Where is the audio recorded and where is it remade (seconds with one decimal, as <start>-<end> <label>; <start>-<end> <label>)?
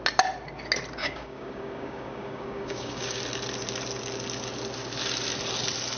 0.0-1.0 recorded; 1.0-3.2 remade; 3.2-6.0 recorded